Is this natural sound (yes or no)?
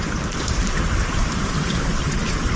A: no